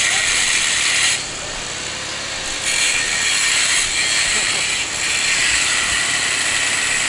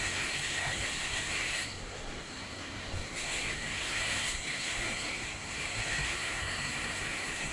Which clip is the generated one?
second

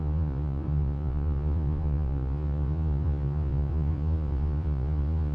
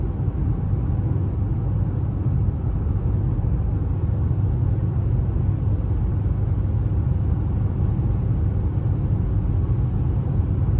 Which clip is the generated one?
first